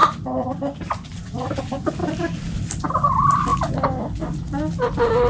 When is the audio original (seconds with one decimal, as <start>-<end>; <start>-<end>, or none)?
1.6-2.0; 2.8-5.3